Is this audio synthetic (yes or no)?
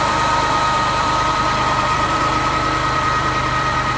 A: yes